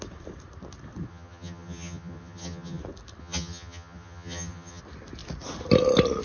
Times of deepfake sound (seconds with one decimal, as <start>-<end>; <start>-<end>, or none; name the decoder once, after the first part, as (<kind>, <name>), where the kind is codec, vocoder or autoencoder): 1.1-2.8 (vocoder, HiFi-GAN); 3.2-4.8